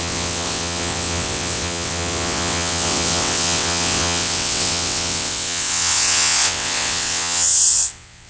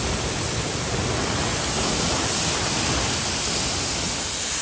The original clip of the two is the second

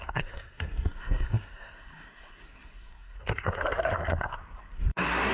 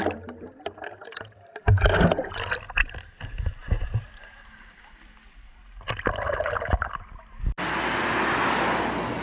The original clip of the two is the second